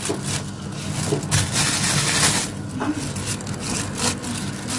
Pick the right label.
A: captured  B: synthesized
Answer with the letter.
A